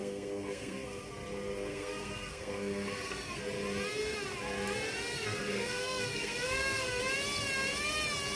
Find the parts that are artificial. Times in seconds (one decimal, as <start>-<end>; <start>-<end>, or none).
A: 0.0-1.1; 1.7-3.4; 5.1-7.0